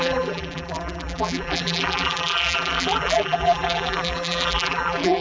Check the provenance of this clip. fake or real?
fake